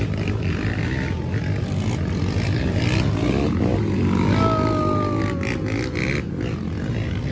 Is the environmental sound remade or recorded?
recorded